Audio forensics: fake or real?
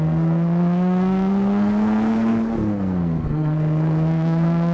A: fake